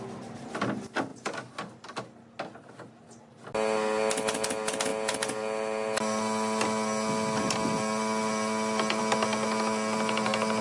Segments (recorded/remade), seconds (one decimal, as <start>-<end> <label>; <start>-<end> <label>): 0.0-10.6 recorded